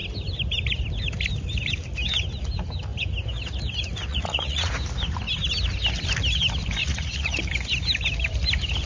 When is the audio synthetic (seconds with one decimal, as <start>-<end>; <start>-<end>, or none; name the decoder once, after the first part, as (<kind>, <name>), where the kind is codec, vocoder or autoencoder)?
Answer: 4.1-4.7 (vocoder, Vocos); 6.8-7.4